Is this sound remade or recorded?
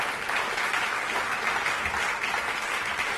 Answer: recorded